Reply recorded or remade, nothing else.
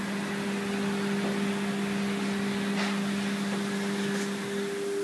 recorded